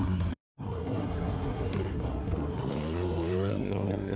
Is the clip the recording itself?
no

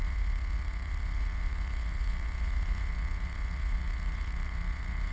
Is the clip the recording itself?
no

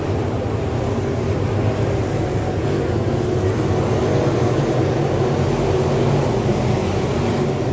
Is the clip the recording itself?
yes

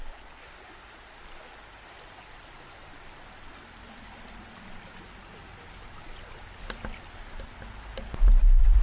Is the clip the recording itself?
yes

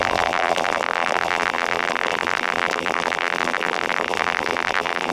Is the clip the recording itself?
no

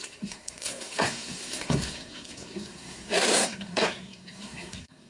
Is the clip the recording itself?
no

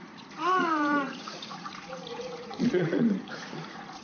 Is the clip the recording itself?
no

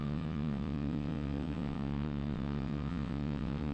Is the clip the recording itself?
no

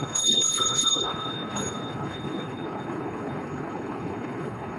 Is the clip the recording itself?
no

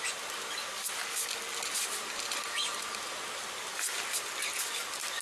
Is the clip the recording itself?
yes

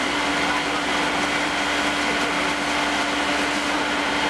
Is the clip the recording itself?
yes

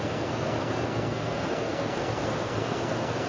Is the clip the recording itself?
no